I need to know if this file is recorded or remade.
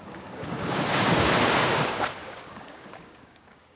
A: remade